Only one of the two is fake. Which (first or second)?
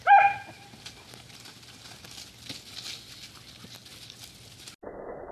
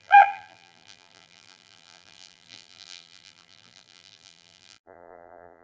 second